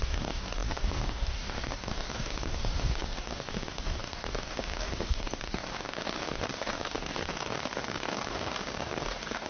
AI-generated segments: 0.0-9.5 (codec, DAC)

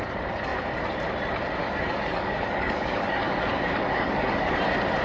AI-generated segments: 1.6-4.6 (codec, DAC)

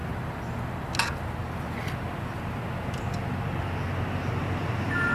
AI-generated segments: none

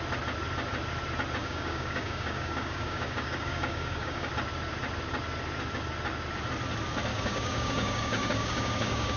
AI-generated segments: 1.4-4.3 (codec, DAC); 7.1-9.2

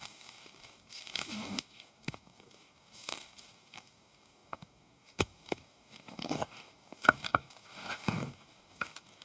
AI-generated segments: 0.0-9.2 (codec, DAC)

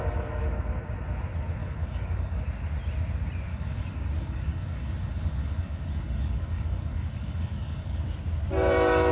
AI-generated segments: 1.6-2.4 (codec, DAC); 3.5-8.0

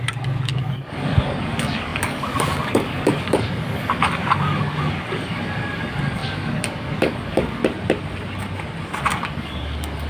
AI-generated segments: 0.0-7.6 (codec, DAC); 9.1-10.1